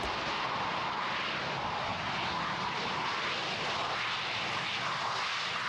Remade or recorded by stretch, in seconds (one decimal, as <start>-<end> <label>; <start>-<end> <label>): 0.0-1.9 remade; 1.9-5.0 recorded; 5.0-5.7 remade